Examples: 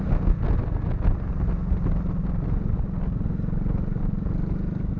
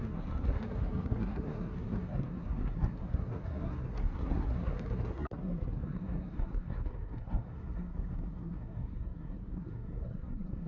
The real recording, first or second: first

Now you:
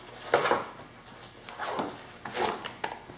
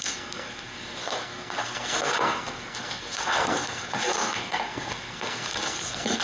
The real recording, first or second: first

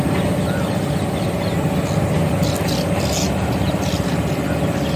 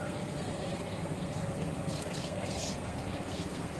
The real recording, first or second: first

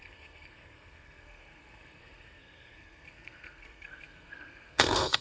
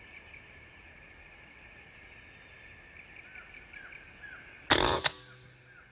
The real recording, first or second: second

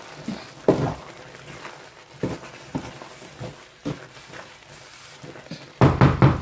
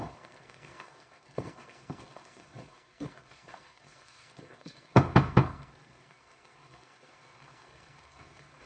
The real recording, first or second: first